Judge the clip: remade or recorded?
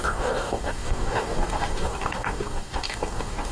remade